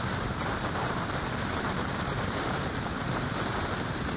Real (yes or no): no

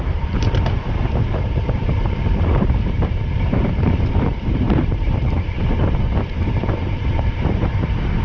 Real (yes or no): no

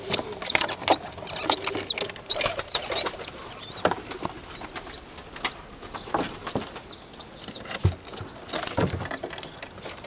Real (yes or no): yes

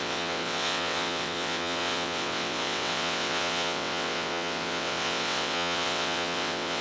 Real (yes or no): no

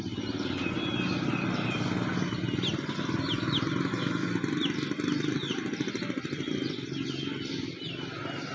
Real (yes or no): yes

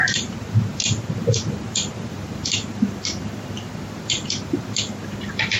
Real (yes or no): no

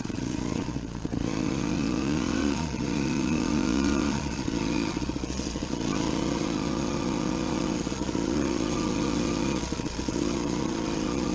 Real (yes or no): no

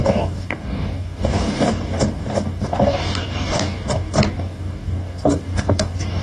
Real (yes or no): no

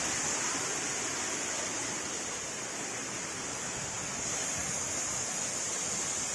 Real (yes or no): yes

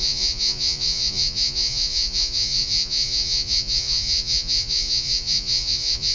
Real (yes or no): no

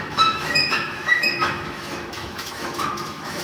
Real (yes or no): no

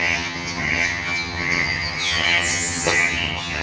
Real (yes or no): no